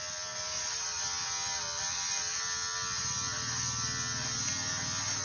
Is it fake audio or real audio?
real